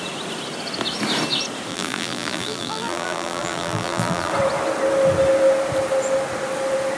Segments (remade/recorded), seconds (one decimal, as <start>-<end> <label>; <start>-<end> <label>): 0.0-1.7 recorded; 1.7-4.3 remade; 4.3-7.0 recorded